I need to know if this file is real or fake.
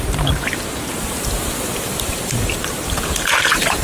fake